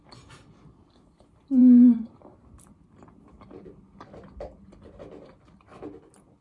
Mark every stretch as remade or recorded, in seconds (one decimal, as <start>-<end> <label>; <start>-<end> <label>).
0.0-1.6 recorded; 1.6-2.5 remade; 2.5-6.4 recorded